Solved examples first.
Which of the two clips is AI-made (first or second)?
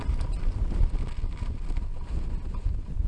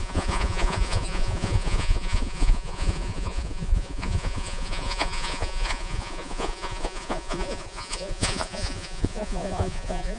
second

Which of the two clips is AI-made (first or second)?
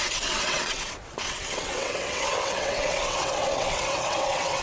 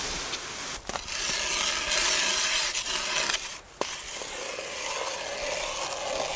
first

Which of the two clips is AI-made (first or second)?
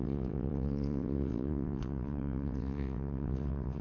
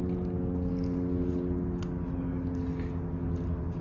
first